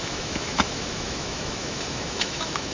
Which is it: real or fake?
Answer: fake